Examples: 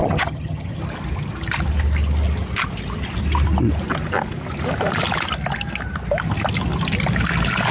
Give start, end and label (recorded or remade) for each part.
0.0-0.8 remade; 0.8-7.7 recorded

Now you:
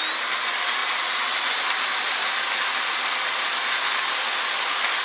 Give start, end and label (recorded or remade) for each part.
0.0-5.0 recorded

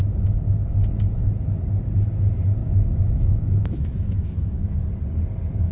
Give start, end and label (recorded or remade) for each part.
0.0-2.6 recorded; 2.6-4.7 remade; 4.7-5.7 recorded

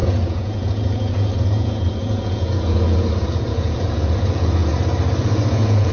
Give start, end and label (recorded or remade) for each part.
0.0-4.7 remade; 4.7-5.2 recorded; 5.2-5.9 remade

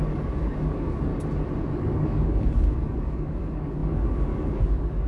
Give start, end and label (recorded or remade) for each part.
0.0-1.1 remade; 1.1-1.7 recorded; 1.7-5.1 remade

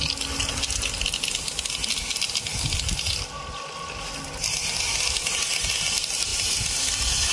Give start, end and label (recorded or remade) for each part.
0.0-7.3 recorded

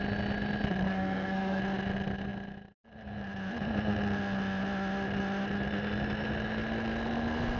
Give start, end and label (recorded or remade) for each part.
0.0-0.9 recorded; 0.9-1.6 remade; 1.6-7.6 recorded

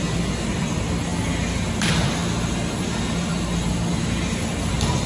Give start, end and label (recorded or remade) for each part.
0.0-5.1 recorded